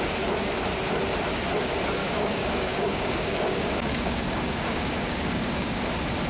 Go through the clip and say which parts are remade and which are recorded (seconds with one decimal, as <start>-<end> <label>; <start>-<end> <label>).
0.0-2.0 recorded; 2.0-5.8 remade; 5.8-6.3 recorded